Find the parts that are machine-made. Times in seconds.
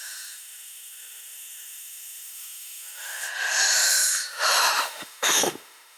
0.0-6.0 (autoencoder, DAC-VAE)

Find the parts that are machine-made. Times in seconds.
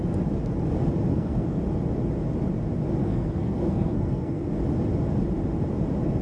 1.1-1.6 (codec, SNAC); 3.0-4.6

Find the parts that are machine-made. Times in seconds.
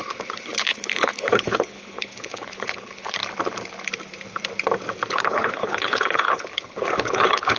0.0-3.2 (codec, HILCodec); 5.1-7.6